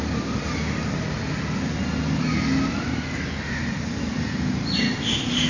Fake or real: real